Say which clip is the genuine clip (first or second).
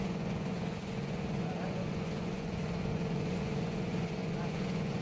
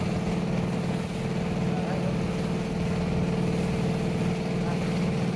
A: second